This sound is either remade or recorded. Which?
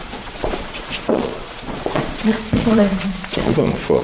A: remade